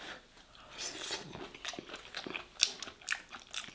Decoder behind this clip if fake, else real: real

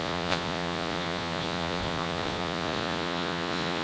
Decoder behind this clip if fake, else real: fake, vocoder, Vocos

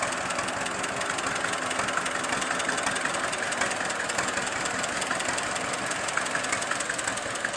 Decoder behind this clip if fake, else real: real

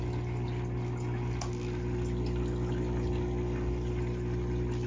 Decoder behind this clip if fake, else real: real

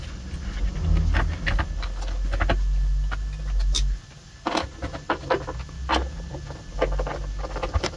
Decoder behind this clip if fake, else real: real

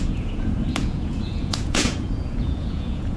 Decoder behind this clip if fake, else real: fake, vocoder, Vocos